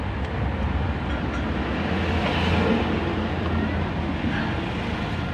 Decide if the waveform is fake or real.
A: real